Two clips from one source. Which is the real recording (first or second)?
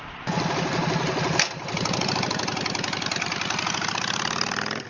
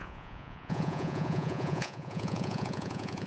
first